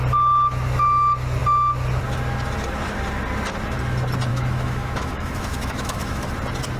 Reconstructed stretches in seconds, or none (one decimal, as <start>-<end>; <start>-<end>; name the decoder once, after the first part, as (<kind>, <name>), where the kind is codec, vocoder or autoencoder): 4.3-6.3 (autoencoder, DAC-VAE)